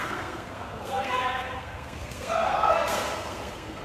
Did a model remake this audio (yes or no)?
yes